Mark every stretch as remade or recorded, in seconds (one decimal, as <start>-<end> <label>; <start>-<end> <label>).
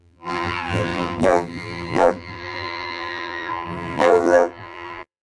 0.0-5.2 remade